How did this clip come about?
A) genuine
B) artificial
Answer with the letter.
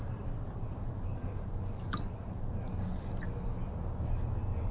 A